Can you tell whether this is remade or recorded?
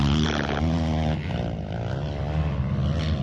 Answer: recorded